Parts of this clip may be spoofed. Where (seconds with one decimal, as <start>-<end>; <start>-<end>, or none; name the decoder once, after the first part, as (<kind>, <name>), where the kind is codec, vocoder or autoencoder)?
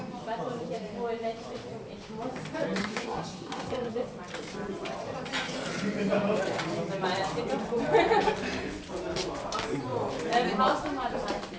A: 2.8-3.9 (codec, SNAC)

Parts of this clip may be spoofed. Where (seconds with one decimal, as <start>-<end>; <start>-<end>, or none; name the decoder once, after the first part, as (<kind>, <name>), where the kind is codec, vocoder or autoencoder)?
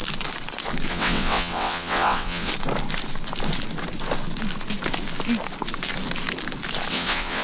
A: 0.9-2.5 (vocoder, WaveNeXt); 6.9-7.4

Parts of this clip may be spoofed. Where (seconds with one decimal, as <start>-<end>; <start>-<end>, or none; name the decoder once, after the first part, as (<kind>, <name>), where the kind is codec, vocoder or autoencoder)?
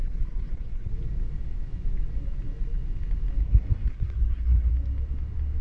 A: 0.0-0.9 (codec, SNAC); 3.4-4.7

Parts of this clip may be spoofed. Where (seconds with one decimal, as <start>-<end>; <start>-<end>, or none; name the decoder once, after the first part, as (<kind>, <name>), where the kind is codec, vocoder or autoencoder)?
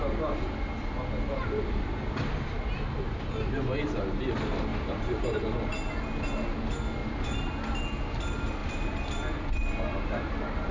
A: 4.7-5.4 (vocoder, BigVGAN v2); 7.0-7.5; 8.6-9.1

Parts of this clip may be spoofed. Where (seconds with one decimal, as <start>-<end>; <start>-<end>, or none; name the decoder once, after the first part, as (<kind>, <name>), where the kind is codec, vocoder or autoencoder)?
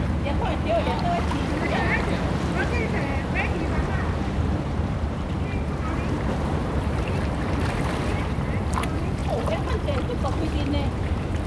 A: 0.0-11.5 (vocoder, BigVGAN v2)